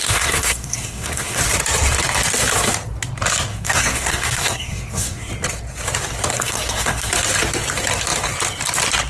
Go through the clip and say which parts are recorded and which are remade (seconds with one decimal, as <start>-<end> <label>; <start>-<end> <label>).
0.0-1.4 remade; 1.4-3.5 recorded; 3.5-5.3 remade; 5.3-6.3 recorded; 6.3-7.1 remade; 7.1-9.1 recorded

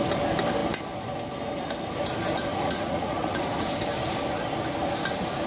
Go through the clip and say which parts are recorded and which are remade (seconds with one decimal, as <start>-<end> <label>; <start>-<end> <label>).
0.0-2.5 recorded; 2.5-3.7 remade; 3.7-5.5 recorded

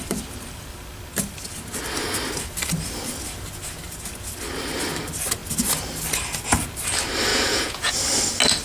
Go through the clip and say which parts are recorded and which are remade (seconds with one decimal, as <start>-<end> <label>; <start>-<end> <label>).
0.0-7.3 recorded; 7.3-7.9 remade; 7.9-8.6 recorded

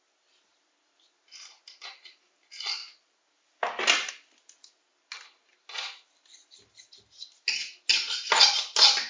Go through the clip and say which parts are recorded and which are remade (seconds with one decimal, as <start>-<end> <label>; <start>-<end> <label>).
0.0-9.1 recorded

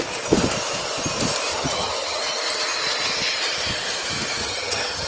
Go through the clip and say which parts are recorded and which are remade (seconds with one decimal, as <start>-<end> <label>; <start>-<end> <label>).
0.0-1.5 recorded; 1.5-2.2 remade; 2.2-4.4 recorded; 4.4-5.1 remade

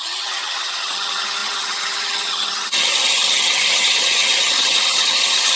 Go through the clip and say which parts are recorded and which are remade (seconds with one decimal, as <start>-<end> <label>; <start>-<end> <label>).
0.0-5.6 remade

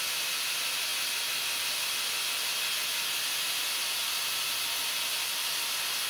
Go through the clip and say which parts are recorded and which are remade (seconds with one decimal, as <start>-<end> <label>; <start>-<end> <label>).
0.0-6.1 recorded

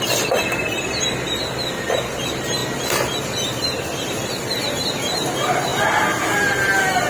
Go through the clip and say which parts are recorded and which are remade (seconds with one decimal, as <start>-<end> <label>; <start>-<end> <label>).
0.0-7.1 recorded